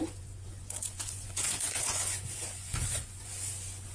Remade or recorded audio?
remade